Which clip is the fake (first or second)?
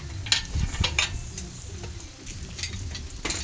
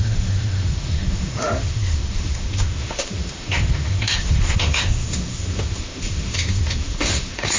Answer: second